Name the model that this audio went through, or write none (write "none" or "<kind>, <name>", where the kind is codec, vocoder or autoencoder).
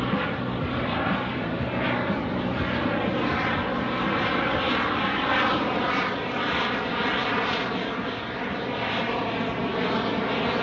none